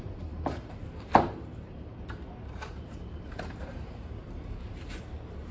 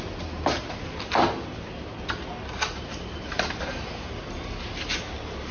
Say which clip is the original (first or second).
second